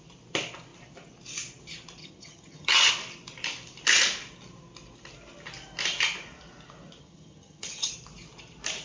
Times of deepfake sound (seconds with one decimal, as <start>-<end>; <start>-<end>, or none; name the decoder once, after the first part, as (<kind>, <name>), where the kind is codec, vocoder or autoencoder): 2.0-2.9 (vocoder, HiFi-GAN); 7.0-7.9